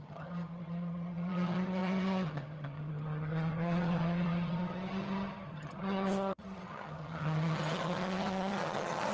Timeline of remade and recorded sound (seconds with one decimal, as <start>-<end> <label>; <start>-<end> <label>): 0.0-9.1 remade